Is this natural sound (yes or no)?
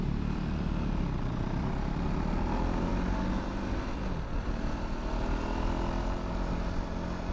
yes